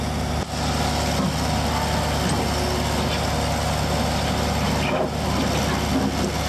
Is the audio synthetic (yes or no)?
no